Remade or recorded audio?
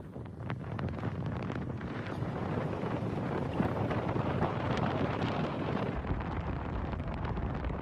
remade